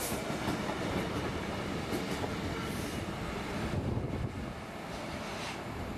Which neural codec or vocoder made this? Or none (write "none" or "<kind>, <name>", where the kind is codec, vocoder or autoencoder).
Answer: none